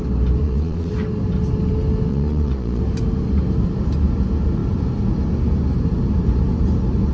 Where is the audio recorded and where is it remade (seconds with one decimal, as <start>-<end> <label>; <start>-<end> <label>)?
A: 0.0-0.4 recorded; 0.4-0.9 remade; 0.9-2.1 recorded; 2.1-2.8 remade; 2.8-7.1 recorded